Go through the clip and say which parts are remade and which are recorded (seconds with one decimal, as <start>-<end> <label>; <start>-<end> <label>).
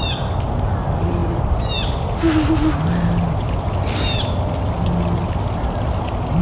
0.0-6.4 recorded